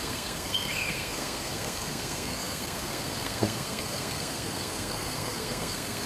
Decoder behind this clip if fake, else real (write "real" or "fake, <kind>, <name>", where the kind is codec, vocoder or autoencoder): fake, codec, SNAC